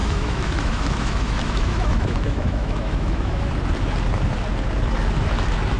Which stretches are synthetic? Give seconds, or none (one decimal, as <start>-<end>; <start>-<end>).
0.0-3.5